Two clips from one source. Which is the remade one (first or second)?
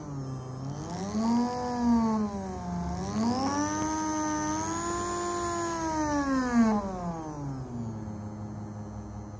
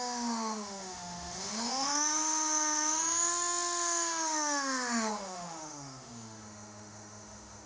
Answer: second